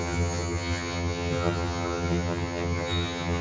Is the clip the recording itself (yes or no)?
no